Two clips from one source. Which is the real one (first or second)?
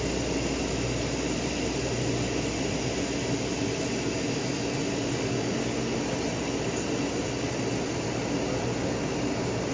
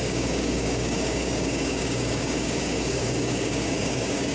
first